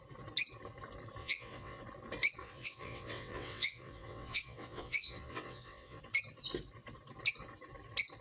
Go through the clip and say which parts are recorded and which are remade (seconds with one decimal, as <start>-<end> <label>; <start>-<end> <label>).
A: 0.0-1.2 recorded; 1.2-1.8 remade; 1.8-2.4 recorded; 2.4-6.0 remade; 6.0-8.2 recorded